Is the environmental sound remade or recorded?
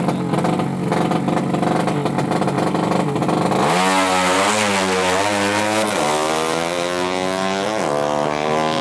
recorded